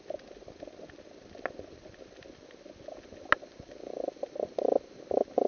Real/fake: real